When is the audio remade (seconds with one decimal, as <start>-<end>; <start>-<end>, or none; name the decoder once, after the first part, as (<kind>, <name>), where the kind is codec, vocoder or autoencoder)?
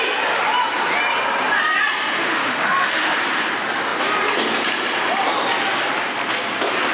2.2-3.1 (autoencoder, DAC-VAE)